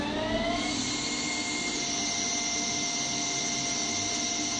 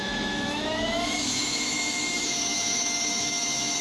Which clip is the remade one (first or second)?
second